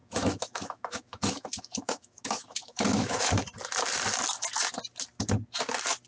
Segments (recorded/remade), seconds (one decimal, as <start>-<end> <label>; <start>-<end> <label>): 0.0-3.3 remade; 3.3-6.1 recorded

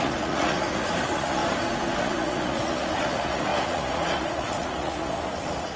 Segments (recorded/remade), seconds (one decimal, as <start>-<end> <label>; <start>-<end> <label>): 0.0-1.4 remade; 1.4-2.0 recorded; 2.0-5.8 remade

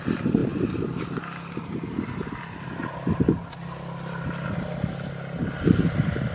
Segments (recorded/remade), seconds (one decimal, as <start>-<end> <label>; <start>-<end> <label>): 0.0-6.3 recorded

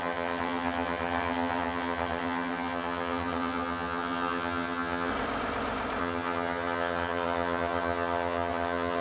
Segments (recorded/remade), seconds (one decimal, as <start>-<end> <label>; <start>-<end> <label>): 0.0-5.1 remade; 5.1-6.0 recorded; 6.0-9.0 remade